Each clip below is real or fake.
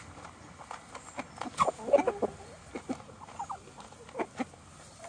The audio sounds real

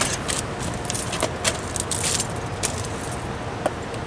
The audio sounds real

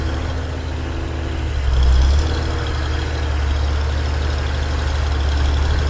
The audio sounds real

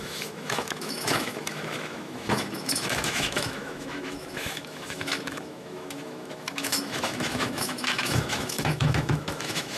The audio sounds fake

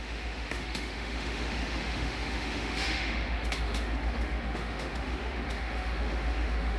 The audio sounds fake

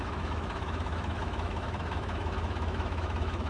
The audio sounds fake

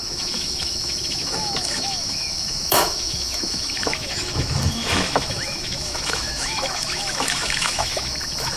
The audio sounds fake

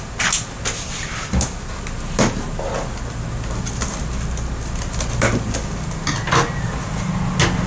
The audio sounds real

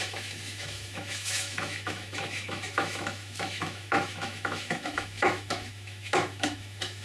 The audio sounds fake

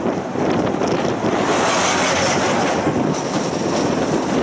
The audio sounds real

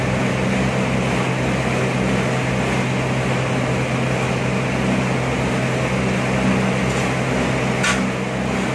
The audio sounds real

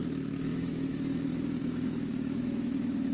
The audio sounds fake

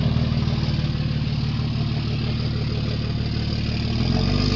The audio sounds real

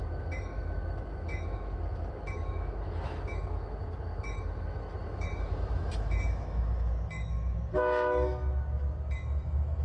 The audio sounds fake